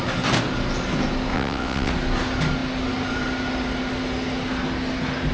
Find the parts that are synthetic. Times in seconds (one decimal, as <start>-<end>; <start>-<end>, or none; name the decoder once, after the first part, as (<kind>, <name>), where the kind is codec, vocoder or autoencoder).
1.3-1.9 (vocoder, WaveNeXt)